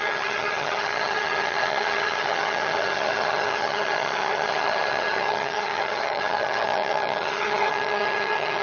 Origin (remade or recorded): remade